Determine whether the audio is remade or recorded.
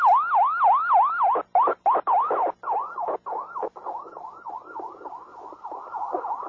recorded